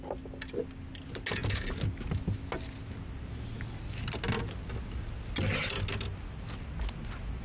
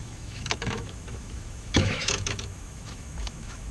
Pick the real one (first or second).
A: first